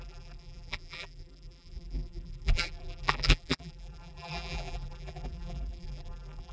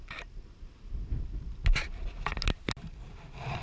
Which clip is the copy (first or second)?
first